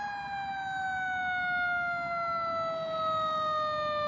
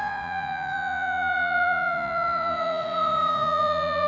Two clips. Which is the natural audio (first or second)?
first